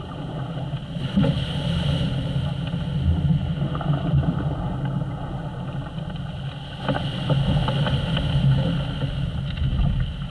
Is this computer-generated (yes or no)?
no